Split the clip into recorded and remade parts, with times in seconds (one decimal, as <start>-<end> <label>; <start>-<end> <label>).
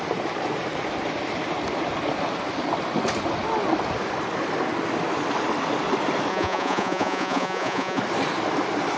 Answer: 0.0-6.3 recorded; 6.3-8.0 remade; 8.0-9.0 recorded